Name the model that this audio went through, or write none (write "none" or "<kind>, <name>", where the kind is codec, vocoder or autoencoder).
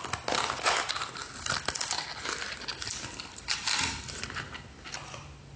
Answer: none